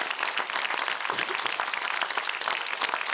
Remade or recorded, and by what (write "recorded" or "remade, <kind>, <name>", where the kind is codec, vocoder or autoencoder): recorded